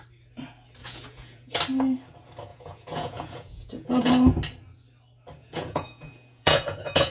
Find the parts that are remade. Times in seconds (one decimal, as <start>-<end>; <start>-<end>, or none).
0.8-1.6; 2.5-4.1; 5.4-7.1